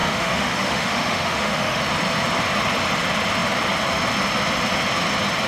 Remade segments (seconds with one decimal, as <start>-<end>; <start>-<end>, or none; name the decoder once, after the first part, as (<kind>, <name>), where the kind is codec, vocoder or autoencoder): 0.0-1.8 (autoencoder, DAC-VAE)